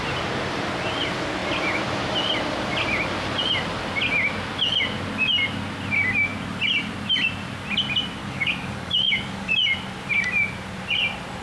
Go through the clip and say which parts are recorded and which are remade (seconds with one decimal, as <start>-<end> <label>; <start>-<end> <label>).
0.0-8.2 recorded; 8.2-9.5 remade; 9.5-11.4 recorded